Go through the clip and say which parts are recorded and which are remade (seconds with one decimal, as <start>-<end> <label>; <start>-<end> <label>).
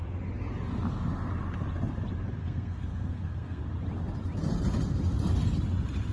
0.0-2.4 recorded; 2.4-3.6 remade; 3.6-6.1 recorded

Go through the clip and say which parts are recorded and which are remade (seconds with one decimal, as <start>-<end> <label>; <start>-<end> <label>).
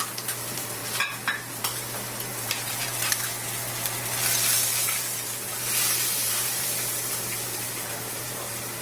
0.0-0.8 remade; 0.8-1.5 recorded; 1.5-3.3 remade; 3.3-5.8 recorded; 5.8-8.8 remade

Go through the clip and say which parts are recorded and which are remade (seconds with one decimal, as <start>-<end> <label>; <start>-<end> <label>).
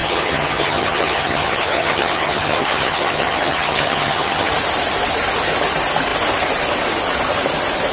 0.0-4.5 remade; 4.5-7.9 recorded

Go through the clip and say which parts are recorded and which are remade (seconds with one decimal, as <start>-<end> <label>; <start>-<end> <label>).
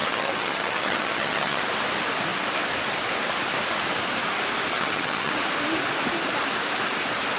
0.0-1.6 remade; 1.6-4.7 recorded; 4.7-5.3 remade; 5.3-7.4 recorded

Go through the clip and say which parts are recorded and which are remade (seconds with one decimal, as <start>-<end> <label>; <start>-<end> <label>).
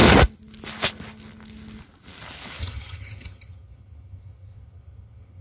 0.0-2.6 recorded; 2.6-5.4 remade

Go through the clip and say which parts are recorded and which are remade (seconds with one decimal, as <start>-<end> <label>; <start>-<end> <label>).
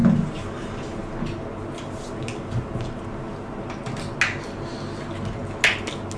0.0-6.2 recorded